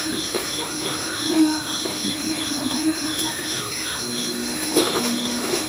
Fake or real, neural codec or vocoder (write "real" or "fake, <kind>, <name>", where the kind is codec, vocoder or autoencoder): fake, autoencoder, DAC-VAE